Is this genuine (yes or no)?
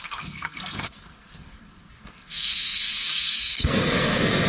no